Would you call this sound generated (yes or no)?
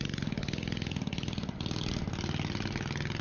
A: no